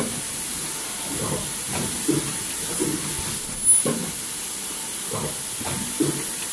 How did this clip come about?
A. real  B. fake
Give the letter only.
A